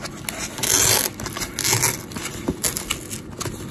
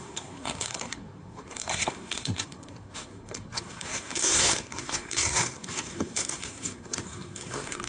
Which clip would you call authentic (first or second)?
first